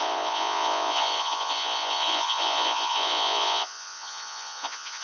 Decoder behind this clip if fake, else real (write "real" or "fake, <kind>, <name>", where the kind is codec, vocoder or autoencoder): fake, vocoder, Vocos